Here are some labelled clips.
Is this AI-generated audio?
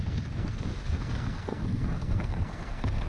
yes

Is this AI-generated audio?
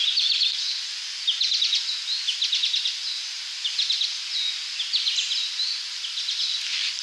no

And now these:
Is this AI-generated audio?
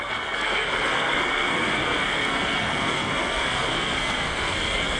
yes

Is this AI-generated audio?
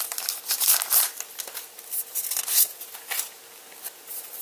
no